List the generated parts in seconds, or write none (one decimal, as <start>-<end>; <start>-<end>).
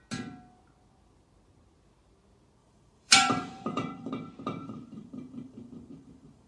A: 2.6-4.1; 4.6-6.5